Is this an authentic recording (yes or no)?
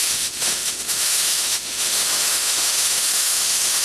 no